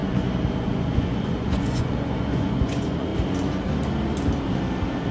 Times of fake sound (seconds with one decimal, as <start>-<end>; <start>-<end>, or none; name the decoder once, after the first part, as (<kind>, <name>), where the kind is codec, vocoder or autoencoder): 0.6-3.1 (vocoder, Vocos)